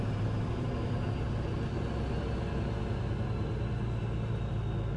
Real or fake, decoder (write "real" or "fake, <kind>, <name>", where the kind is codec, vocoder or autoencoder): real